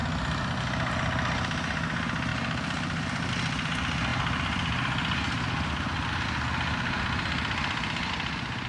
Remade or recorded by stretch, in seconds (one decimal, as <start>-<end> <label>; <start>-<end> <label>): 0.0-2.3 recorded; 2.3-3.3 remade; 3.3-8.7 recorded